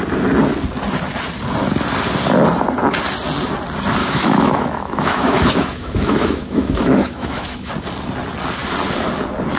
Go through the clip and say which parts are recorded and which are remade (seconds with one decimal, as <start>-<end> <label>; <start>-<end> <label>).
0.0-4.0 recorded; 4.0-7.7 remade; 7.7-9.6 recorded